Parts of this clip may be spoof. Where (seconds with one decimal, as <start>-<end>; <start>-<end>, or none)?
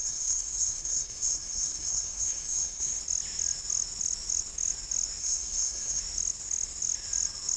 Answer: 0.0-3.0; 5.2-6.0